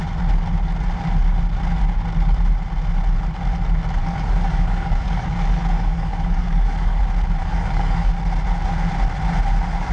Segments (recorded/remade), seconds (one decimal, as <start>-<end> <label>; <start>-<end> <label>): 0.0-4.0 recorded; 4.0-7.0 remade; 7.0-7.4 recorded; 7.4-8.1 remade; 8.1-9.9 recorded